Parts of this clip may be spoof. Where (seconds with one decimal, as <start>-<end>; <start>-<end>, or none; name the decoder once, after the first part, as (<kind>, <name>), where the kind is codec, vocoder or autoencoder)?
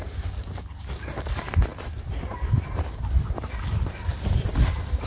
1.7-3.5 (vocoder, BigVGAN v2); 4.1-5.1